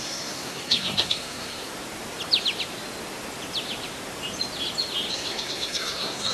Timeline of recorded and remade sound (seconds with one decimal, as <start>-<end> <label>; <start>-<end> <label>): 0.0-1.7 remade; 1.7-5.1 recorded; 5.1-6.3 remade